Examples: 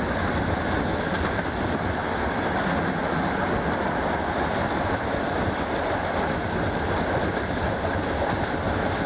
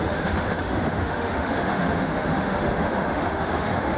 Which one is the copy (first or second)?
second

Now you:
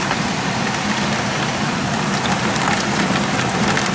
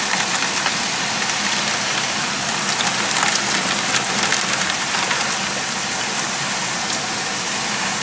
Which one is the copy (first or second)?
first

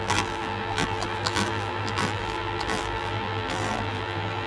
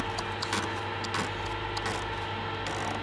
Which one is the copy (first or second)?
first